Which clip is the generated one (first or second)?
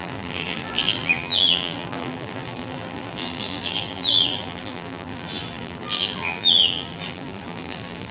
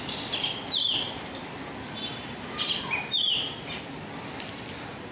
first